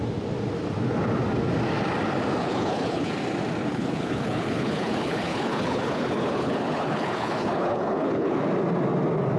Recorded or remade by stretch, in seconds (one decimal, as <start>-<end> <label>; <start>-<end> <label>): 0.0-2.4 recorded; 2.4-3.1 remade; 3.1-3.6 recorded; 3.6-8.3 remade; 8.3-9.4 recorded